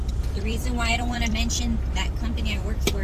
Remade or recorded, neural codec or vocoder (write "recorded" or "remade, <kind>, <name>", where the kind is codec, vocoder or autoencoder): remade, vocoder, BigVGAN v2